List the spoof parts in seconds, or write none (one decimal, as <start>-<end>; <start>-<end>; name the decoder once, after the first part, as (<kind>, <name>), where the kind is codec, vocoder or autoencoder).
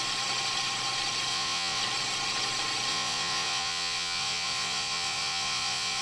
1.3-1.8 (vocoder, Vocos); 2.9-6.0